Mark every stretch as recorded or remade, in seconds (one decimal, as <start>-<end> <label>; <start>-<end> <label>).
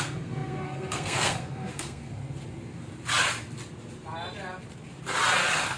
0.0-2.2 remade; 2.2-5.8 recorded